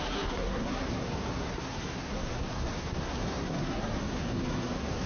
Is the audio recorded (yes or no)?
no